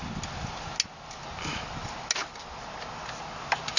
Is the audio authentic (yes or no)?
yes